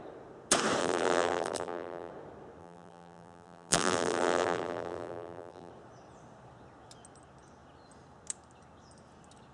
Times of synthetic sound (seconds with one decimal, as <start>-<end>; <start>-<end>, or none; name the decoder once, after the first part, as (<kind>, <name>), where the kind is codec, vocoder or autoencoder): 0.8-2.1 (vocoder, BigVGAN v2); 2.6-5.7